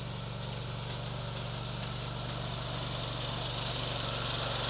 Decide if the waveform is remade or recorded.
recorded